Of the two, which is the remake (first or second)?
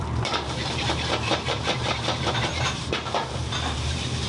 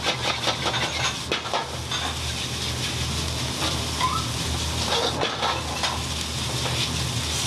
first